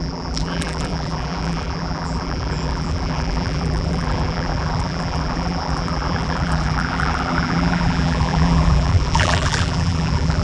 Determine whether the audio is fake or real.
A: fake